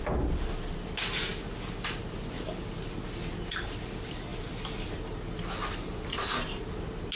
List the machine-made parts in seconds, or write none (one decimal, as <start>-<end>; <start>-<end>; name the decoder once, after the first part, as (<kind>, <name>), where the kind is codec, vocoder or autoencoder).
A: none